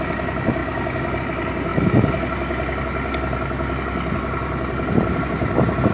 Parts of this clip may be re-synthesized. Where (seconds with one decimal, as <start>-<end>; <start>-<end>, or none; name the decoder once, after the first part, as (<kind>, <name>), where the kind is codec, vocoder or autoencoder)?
none